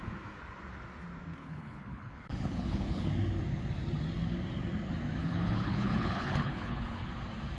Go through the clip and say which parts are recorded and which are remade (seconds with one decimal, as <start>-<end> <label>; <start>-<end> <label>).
0.0-1.4 recorded; 1.4-3.1 remade; 3.1-5.2 recorded; 5.2-7.1 remade; 7.1-7.6 recorded